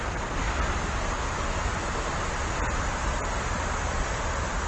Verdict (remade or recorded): recorded